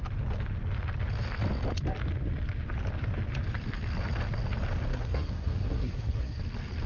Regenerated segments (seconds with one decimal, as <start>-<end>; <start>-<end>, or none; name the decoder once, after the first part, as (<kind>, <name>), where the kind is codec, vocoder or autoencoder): 4.9-6.4 (codec, SNAC)